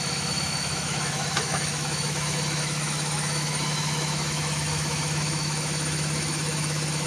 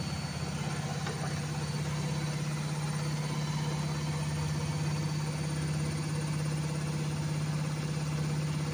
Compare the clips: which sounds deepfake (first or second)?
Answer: first